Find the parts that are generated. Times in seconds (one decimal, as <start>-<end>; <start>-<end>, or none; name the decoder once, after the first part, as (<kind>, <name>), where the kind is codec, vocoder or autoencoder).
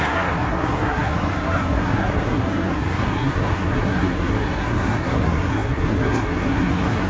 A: 0.0-7.1 (codec, SNAC)